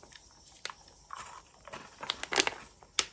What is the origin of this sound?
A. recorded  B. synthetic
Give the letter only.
A